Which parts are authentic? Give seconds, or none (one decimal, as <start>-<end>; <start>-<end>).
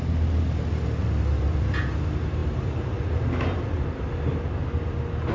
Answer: 0.0-5.3